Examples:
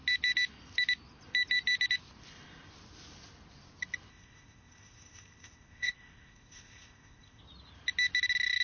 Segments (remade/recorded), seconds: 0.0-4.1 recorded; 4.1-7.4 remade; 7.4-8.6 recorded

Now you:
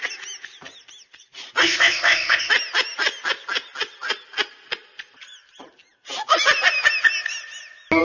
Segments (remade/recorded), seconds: 0.0-1.6 recorded; 1.6-2.5 remade; 2.5-8.0 recorded

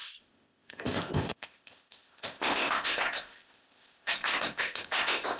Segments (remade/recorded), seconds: 0.0-5.4 remade

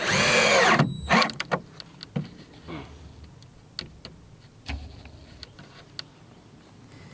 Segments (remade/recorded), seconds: 0.0-7.1 recorded

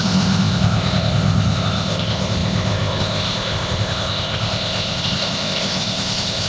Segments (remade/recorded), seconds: 0.0-6.5 remade